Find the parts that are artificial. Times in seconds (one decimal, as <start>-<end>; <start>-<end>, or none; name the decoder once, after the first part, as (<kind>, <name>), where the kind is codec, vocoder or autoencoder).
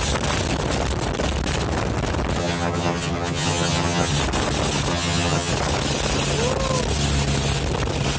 2.4-4.1 (vocoder, HiFi-GAN); 4.9-5.5